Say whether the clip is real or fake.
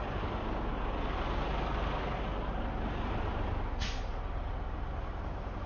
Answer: real